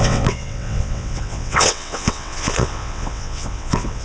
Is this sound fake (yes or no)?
yes